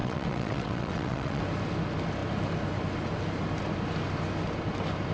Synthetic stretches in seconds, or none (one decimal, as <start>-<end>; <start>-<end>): 0.0-1.4